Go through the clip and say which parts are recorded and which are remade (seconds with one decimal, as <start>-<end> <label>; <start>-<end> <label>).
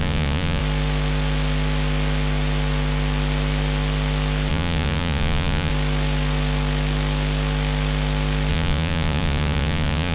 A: 0.0-0.6 remade; 0.6-4.5 recorded; 4.5-5.7 remade; 5.7-8.5 recorded; 8.5-10.1 remade